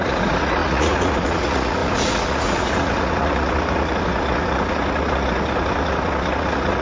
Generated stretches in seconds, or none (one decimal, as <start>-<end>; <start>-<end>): 0.0-6.8